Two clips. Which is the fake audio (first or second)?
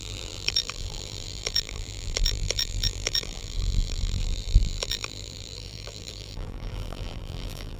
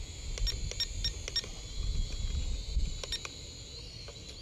first